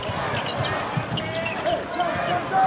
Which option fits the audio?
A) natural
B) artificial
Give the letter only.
A